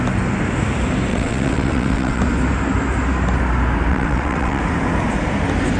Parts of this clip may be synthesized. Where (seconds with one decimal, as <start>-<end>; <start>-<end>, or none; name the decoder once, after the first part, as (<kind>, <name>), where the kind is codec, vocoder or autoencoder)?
1.1-2.2 (vocoder, WaveNeXt); 3.9-4.6